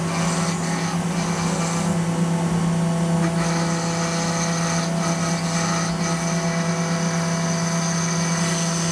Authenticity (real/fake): real